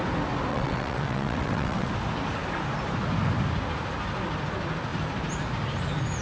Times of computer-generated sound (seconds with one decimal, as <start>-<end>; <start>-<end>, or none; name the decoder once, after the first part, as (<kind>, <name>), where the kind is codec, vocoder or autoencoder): 0.5-1.9 (vocoder, WaveNeXt)